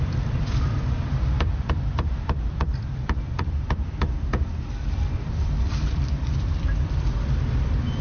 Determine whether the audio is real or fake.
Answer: fake